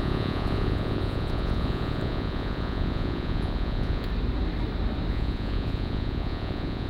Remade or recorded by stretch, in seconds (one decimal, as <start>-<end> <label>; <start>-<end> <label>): 0.0-4.1 remade; 4.1-5.1 recorded; 5.1-6.9 remade